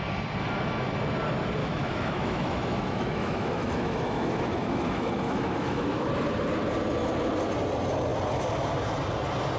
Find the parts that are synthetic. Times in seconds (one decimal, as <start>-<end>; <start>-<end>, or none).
1.6-6.1